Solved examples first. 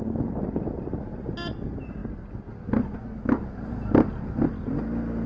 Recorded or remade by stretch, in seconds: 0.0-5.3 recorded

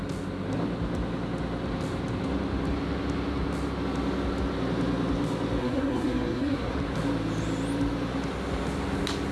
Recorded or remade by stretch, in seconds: 0.0-5.6 recorded; 5.6-6.7 remade; 6.7-9.3 recorded

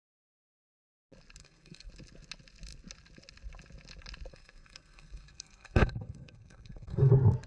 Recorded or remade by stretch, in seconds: 0.0-1.4 recorded; 1.4-1.9 remade; 1.9-4.3 recorded; 4.3-7.1 remade; 7.1-7.5 recorded